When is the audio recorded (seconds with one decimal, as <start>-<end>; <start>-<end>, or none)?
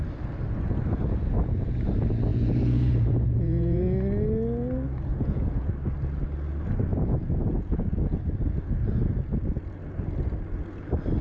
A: 0.0-2.3; 3.8-5.1; 5.7-6.9; 8.2-11.2